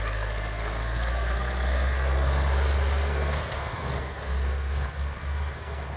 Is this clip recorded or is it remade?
remade